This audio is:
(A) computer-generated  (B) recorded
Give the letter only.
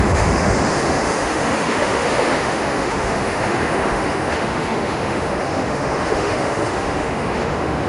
A